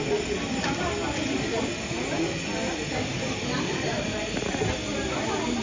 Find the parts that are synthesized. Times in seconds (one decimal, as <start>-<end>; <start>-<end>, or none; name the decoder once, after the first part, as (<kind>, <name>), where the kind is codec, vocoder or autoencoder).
none